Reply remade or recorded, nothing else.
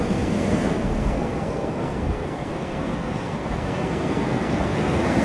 remade